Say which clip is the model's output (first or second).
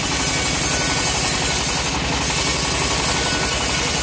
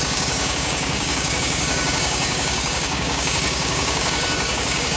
second